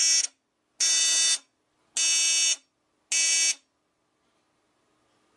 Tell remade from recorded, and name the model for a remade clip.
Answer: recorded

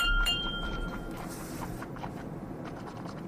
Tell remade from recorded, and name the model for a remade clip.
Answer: remade, vocoder, BigVGAN v2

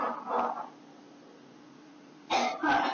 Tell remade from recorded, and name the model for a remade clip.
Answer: recorded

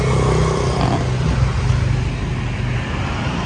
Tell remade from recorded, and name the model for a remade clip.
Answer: recorded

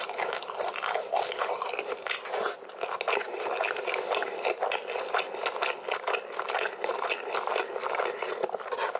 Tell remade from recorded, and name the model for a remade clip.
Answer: recorded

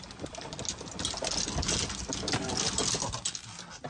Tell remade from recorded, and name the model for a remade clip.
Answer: recorded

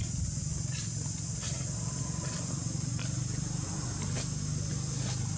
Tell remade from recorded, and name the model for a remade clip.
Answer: recorded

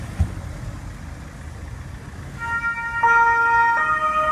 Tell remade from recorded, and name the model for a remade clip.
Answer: recorded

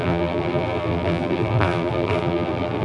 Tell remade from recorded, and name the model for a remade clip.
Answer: remade, vocoder, BigVGAN v2